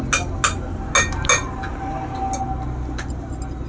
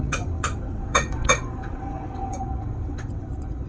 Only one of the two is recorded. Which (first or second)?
first